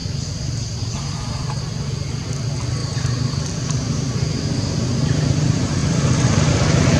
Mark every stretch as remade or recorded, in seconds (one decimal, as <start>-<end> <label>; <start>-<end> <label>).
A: 0.0-1.6 remade; 1.6-2.8 recorded; 2.8-4.3 remade; 4.3-5.8 recorded; 5.8-6.4 remade; 6.4-7.0 recorded